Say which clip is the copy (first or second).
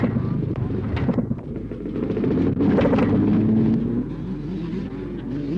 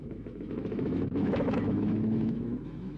second